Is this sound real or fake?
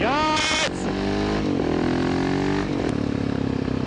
real